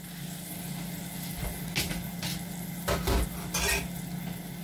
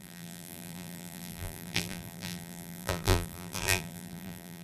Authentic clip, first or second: first